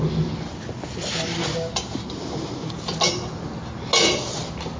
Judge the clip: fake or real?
real